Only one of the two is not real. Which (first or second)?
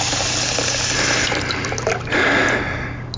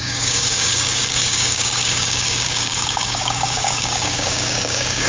second